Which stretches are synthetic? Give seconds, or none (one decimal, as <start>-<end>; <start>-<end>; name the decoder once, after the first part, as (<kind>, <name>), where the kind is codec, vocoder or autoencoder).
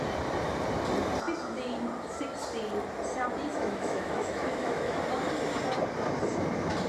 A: 3.5-5.0 (autoencoder, DAC-VAE)